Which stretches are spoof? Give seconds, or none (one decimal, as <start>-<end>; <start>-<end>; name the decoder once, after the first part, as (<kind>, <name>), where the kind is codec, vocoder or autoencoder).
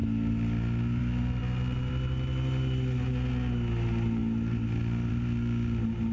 none